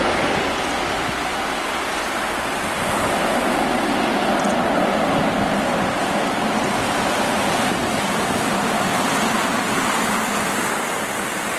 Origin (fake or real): real